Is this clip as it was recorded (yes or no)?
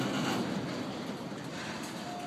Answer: yes